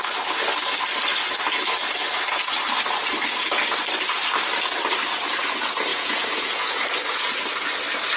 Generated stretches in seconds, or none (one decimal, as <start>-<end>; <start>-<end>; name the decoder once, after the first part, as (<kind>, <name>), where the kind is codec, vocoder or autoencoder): 5.9-6.8 (vocoder, Vocos)